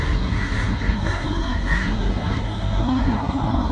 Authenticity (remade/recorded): remade